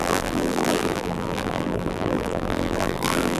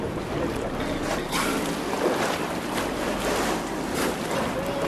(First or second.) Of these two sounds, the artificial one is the first